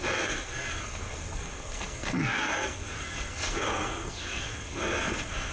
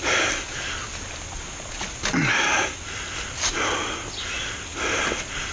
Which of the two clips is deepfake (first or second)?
first